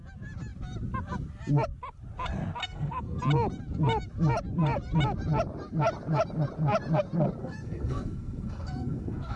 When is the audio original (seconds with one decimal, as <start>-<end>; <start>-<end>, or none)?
0.0-2.6; 3.2-7.4